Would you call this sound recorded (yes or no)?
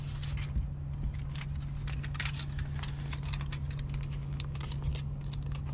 yes